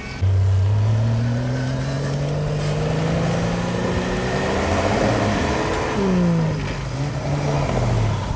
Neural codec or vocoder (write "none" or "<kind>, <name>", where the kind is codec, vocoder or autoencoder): none